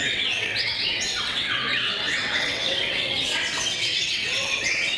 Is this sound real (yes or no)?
no